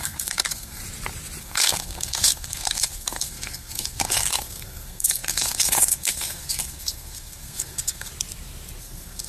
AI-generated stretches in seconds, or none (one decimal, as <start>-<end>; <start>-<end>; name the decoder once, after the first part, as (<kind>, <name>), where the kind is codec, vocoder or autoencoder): 0.0-0.8 (codec, SNAC); 1.4-8.1; 8.8-9.3